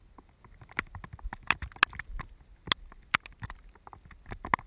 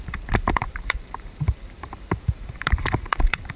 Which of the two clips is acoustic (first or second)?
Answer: first